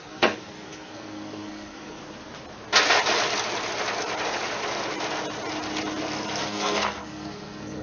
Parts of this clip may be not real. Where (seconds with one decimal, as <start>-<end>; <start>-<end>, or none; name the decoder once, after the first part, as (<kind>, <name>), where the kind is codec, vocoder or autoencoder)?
0.0-2.0 (codec, SNAC); 6.4-7.8